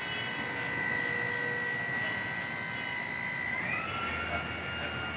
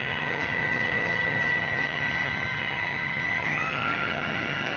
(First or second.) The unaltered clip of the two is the first